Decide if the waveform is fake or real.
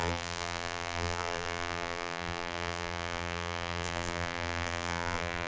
fake